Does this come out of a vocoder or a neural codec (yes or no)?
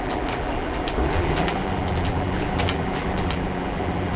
yes